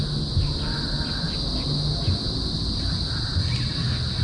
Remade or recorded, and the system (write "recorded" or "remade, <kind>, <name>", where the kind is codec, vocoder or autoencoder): recorded